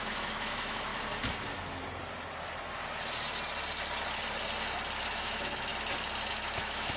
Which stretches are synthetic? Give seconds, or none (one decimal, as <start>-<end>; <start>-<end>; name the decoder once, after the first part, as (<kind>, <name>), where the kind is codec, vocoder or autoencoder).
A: 0.0-0.9 (autoencoder, DAC-VAE); 5.0-5.7; 6.3-7.0